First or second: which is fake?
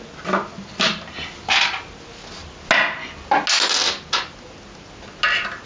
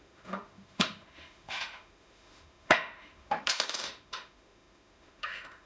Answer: second